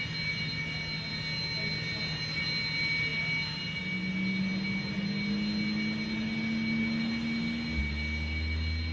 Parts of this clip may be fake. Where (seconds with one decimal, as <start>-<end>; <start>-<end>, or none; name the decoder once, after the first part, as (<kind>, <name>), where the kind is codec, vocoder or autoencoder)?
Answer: none